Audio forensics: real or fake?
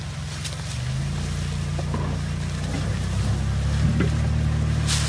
real